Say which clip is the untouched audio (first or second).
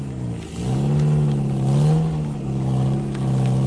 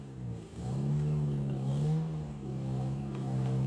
first